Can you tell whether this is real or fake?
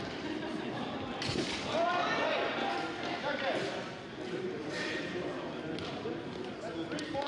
real